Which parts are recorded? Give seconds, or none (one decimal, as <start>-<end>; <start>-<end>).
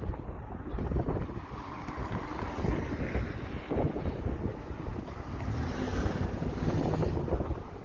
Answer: 0.0-7.8